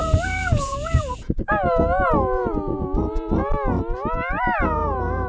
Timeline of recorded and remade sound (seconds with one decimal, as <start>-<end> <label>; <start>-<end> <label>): 0.0-3.5 remade; 3.5-4.3 recorded; 4.3-5.3 remade